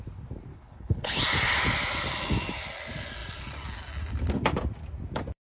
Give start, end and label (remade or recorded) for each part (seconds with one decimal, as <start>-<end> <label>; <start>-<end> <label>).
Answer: 0.0-0.5 recorded; 0.5-1.2 remade; 1.2-5.5 recorded